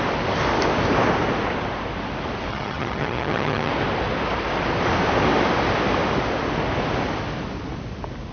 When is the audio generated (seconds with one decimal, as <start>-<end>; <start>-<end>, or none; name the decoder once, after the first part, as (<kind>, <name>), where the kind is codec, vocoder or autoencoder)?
2.5-3.7 (vocoder, HiFi-GAN)